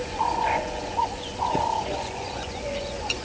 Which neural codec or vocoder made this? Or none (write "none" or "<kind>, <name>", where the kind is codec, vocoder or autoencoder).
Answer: vocoder, Vocos